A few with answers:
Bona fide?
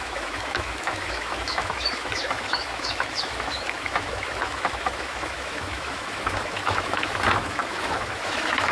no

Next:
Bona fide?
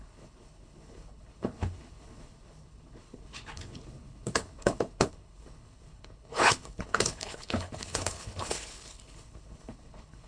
no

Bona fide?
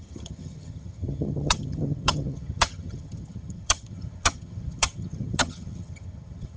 no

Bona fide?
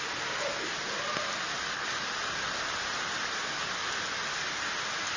yes